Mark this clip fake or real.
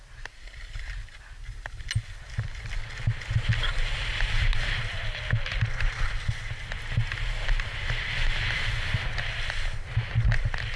real